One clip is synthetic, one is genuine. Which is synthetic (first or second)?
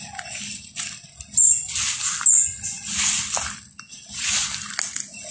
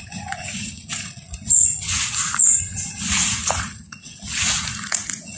second